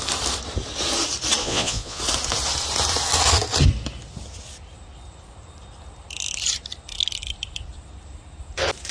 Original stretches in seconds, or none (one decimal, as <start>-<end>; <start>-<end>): 0.0-1.4; 2.0-8.9